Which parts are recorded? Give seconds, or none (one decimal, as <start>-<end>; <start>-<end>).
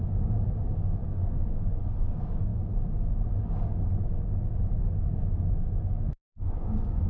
2.5-4.6